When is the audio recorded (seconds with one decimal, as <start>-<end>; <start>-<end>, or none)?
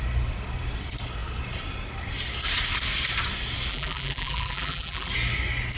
0.0-3.7; 5.1-5.8